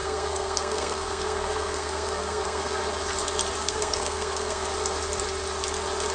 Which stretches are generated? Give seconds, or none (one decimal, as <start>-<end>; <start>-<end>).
0.0-2.8; 3.6-4.7